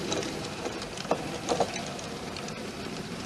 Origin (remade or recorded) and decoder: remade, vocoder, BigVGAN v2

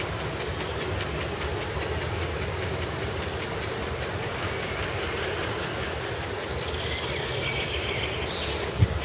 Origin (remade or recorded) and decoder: recorded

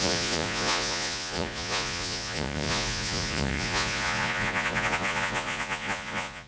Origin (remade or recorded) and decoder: remade, vocoder, Vocos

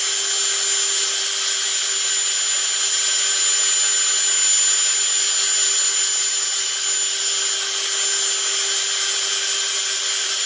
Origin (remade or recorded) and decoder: recorded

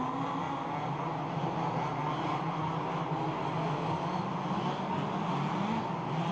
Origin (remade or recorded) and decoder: recorded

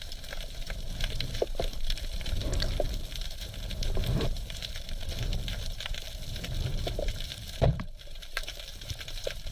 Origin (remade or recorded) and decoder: remade, vocoder, BigVGAN v2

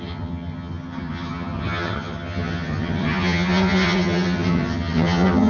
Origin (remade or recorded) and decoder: remade, vocoder, HiFi-GAN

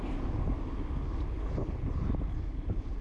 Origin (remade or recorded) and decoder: recorded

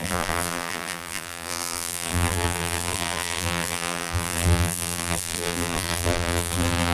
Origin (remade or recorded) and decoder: remade, vocoder, BigVGAN v2